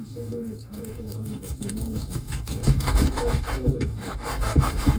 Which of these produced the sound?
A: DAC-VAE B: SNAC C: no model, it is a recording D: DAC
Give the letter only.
D